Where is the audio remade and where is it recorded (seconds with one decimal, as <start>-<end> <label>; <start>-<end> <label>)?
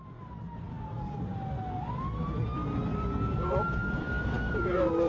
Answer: 0.0-5.1 recorded